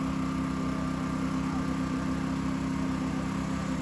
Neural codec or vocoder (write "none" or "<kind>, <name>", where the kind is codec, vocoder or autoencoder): none